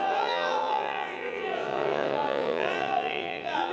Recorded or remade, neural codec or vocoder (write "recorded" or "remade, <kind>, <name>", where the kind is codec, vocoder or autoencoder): remade, vocoder, WaveNeXt